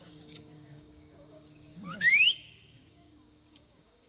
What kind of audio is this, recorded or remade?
remade